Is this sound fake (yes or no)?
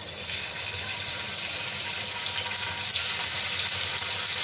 no